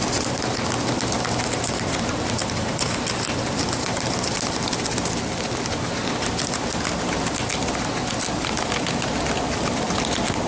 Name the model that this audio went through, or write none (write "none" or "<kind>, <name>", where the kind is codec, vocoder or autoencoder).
none